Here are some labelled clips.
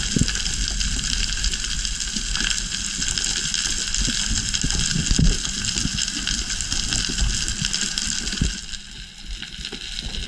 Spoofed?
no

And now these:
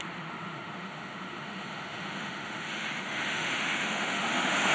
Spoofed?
yes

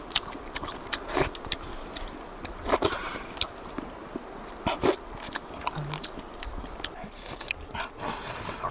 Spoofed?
no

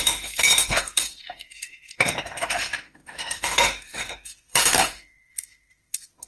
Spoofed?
yes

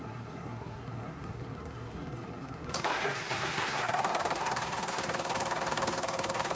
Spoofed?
yes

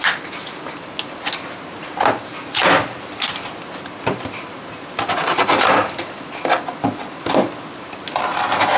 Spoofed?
no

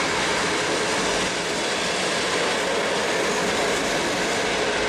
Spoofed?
no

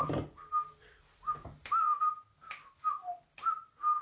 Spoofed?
no